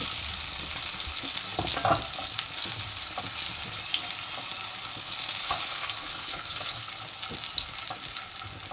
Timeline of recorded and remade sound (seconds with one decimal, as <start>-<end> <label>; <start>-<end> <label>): 0.0-5.4 recorded; 5.4-6.9 remade; 6.9-8.7 recorded